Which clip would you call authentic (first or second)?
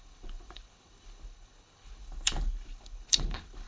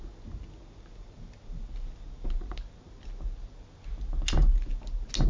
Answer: second